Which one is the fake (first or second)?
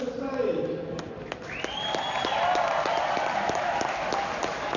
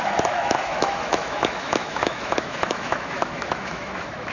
second